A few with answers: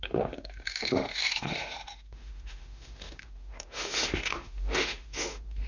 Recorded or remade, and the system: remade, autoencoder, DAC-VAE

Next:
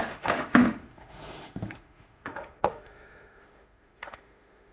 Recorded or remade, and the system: remade, autoencoder, DAC-VAE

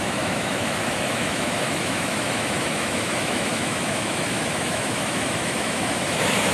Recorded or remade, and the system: remade, autoencoder, DAC-VAE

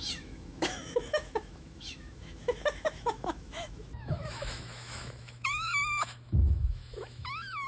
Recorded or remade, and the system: remade, autoencoder, DAC-VAE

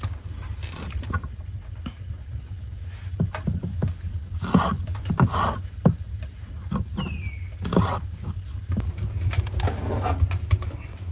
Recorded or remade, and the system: recorded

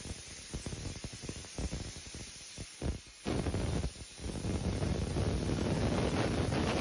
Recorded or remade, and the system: recorded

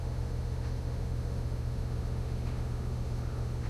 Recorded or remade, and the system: remade, autoencoder, DAC-VAE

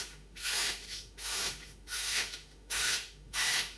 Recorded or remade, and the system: remade, autoencoder, DAC-VAE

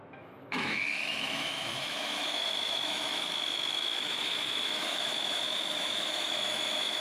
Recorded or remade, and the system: remade, autoencoder, DAC-VAE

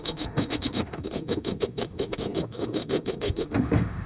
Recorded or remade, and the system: remade, autoencoder, DAC-VAE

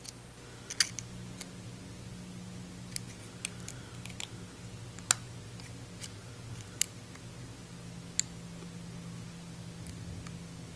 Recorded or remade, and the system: recorded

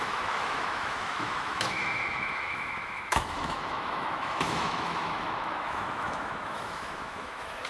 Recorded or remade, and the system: remade, autoencoder, DAC-VAE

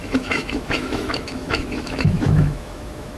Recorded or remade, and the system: remade, autoencoder, DAC-VAE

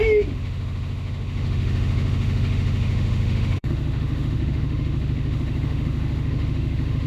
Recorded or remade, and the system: remade, autoencoder, DAC-VAE